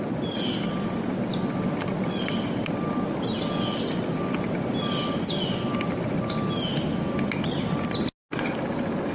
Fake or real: real